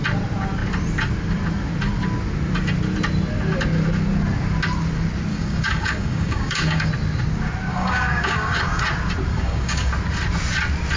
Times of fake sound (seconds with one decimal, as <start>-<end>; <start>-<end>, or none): 5.3-6.9; 7.7-8.8; 9.3-9.9